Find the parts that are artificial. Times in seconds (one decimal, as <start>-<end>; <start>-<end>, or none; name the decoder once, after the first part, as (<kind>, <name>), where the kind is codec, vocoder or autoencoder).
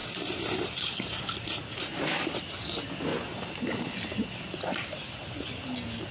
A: 0.0-2.4 (vocoder, BigVGAN v2); 3.1-3.9